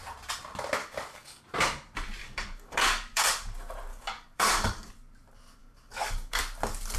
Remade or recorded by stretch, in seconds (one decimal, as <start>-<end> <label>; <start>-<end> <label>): 0.0-0.8 recorded; 0.8-1.4 remade; 1.4-2.2 recorded; 2.2-3.3 remade; 3.3-3.9 recorded; 3.9-4.9 remade; 4.9-5.6 recorded; 5.6-6.4 remade; 6.4-7.0 recorded

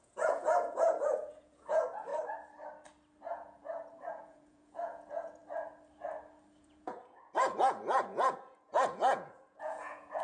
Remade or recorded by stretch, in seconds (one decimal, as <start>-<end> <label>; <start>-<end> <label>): 0.0-2.1 remade; 2.1-3.2 recorded; 3.2-5.4 remade; 5.4-6.6 recorded; 6.6-10.2 remade

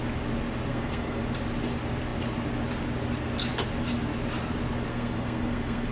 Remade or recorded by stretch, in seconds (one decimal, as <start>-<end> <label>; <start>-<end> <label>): 0.0-0.7 recorded; 0.7-1.2 remade; 1.2-4.9 recorded; 4.9-5.9 remade

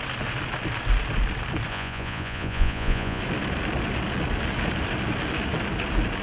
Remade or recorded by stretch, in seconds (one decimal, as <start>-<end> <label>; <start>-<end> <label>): 0.0-1.7 recorded; 1.7-3.2 remade; 3.2-6.2 recorded

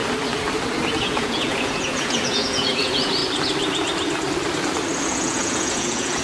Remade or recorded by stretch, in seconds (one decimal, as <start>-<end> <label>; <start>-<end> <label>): 0.0-1.0 recorded; 1.0-3.2 remade; 3.2-5.0 recorded; 5.0-6.2 remade

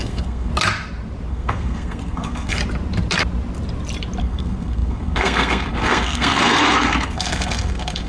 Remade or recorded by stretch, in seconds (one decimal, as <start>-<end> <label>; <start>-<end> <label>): 0.0-0.5 remade; 0.5-1.3 recorded; 1.3-2.6 remade; 2.6-4.2 recorded; 4.2-8.1 remade

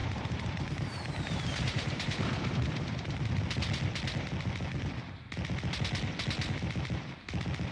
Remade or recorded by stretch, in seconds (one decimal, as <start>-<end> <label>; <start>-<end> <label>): 0.0-3.3 remade; 3.3-7.7 recorded

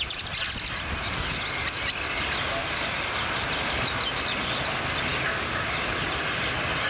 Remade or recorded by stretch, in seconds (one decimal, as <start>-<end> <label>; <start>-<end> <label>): 0.0-6.9 recorded